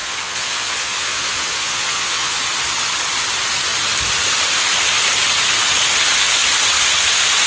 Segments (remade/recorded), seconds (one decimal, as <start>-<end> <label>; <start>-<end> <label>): 0.0-2.4 remade; 2.4-7.5 recorded